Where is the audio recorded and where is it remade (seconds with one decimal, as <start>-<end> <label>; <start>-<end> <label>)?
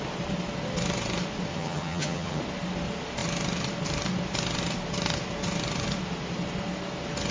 0.0-1.5 recorded; 1.5-2.4 remade; 2.4-7.3 recorded